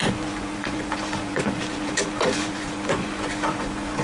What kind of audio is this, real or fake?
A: fake